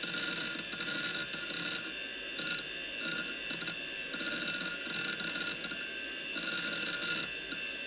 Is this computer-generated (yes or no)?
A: no